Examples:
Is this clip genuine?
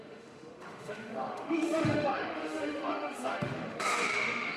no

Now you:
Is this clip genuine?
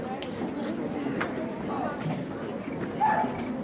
yes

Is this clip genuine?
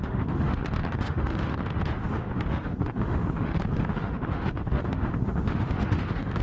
no